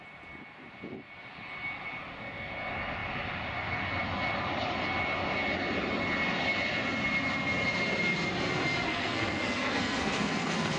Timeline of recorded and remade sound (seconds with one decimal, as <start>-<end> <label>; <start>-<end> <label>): 0.0-8.9 recorded; 8.9-10.8 remade